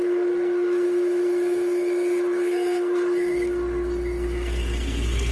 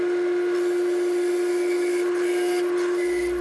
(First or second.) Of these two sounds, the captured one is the second